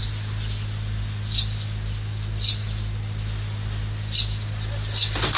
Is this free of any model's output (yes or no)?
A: yes